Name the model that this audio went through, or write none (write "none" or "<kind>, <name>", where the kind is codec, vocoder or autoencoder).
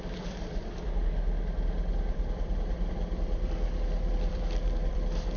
vocoder, BigVGAN v2